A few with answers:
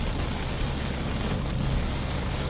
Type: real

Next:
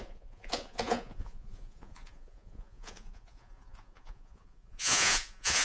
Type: fake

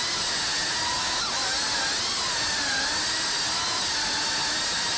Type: real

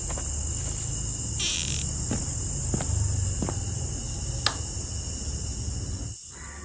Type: real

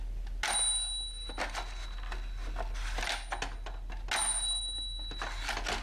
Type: real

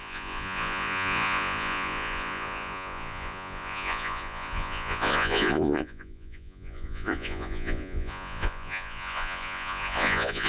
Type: fake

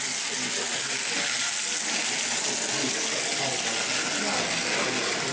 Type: real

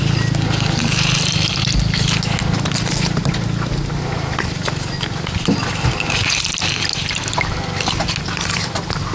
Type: real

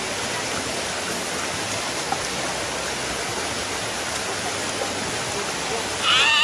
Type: real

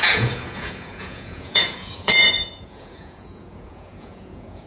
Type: fake